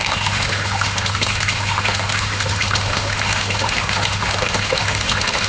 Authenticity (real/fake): fake